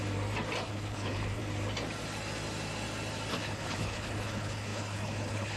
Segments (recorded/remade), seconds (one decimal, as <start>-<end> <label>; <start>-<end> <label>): 0.0-0.7 recorded; 0.7-1.4 remade; 1.4-3.3 recorded; 3.3-5.6 remade